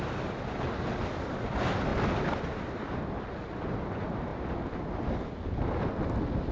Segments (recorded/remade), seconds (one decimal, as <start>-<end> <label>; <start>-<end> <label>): 0.0-6.5 recorded